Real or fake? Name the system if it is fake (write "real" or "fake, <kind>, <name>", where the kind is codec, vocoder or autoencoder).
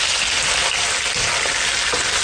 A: real